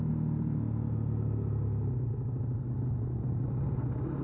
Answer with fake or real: real